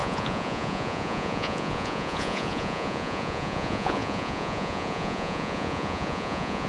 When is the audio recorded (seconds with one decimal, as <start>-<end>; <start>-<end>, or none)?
none